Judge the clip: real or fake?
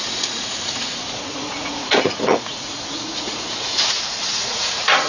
fake